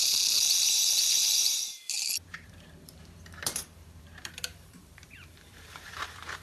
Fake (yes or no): yes